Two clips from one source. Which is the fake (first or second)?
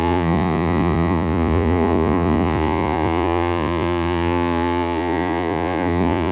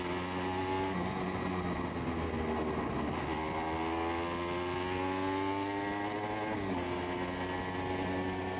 first